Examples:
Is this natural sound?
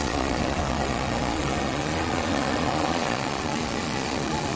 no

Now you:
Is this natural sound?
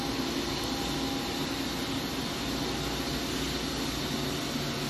yes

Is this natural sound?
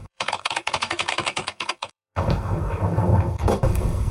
no